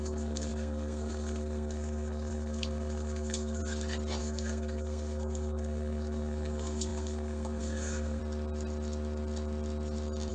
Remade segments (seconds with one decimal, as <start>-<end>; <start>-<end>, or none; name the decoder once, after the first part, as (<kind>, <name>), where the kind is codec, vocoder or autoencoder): 0.0-3.6 (codec, SNAC); 4.2-8.2